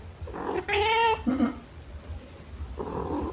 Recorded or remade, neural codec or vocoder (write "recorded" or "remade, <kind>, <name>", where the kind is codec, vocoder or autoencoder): recorded